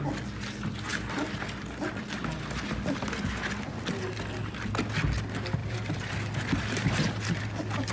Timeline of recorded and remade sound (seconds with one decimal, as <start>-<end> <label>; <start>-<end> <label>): 0.0-5.6 recorded; 5.6-7.4 remade; 7.4-7.9 recorded